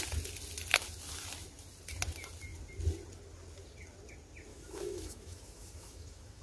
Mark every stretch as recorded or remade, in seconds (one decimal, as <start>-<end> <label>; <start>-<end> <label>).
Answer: 0.0-4.5 recorded; 4.5-6.4 remade